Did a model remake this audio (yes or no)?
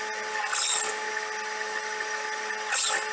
no